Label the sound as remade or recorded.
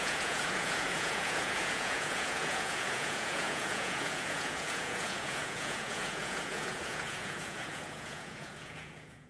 remade